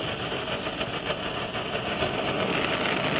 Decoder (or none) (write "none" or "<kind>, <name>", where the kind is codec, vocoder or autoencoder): none